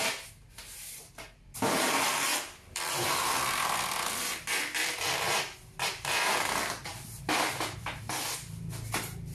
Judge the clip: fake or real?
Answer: fake